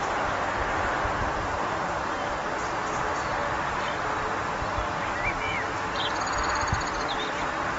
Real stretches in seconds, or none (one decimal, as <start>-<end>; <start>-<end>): 0.0-7.8